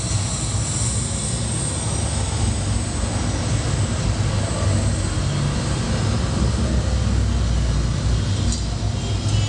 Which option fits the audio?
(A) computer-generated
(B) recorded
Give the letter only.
B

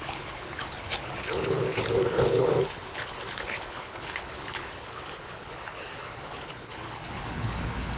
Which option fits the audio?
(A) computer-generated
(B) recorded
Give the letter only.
A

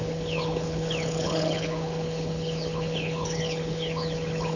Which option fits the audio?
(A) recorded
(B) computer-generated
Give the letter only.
B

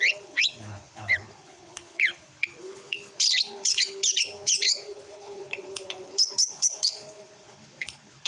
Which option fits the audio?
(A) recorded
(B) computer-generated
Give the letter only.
B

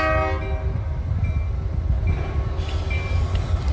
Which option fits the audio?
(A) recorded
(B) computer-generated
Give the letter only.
A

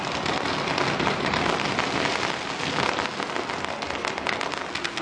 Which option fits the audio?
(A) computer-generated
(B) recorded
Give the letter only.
B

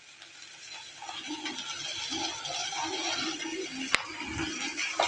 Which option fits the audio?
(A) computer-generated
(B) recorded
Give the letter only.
B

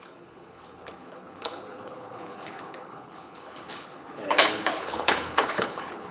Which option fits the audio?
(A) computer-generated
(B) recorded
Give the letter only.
A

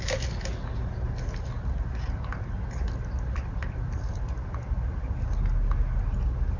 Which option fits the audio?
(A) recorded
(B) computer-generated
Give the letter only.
A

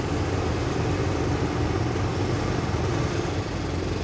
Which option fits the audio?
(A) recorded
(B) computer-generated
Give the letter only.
A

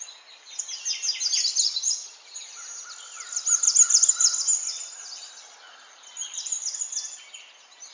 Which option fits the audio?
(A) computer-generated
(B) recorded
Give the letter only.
B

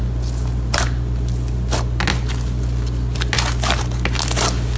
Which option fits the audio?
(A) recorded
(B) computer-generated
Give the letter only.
A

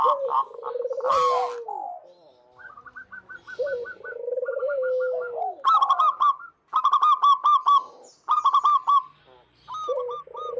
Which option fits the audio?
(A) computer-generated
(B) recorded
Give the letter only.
B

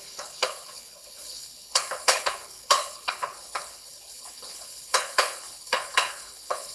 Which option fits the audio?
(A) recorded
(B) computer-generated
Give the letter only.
B